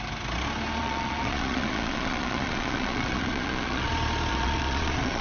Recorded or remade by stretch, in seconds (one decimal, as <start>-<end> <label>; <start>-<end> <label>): 0.0-0.8 recorded; 0.8-3.9 remade; 3.9-4.3 recorded; 4.3-5.2 remade